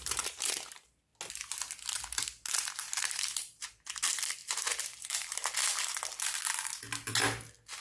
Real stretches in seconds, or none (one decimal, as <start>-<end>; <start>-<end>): 1.1-2.2; 4.4-5.0; 5.4-7.8